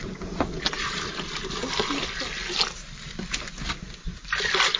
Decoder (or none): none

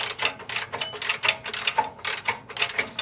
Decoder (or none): none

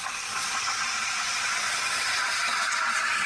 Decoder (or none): vocoder, Vocos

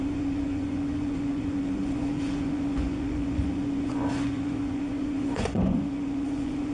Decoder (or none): vocoder, Vocos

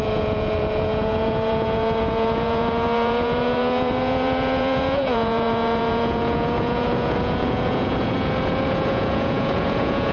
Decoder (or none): vocoder, Vocos